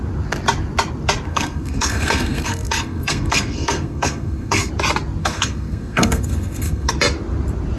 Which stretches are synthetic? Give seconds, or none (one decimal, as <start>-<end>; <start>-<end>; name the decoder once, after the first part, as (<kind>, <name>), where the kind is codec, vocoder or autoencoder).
1.3-4.7 (codec, SNAC); 5.2-6.9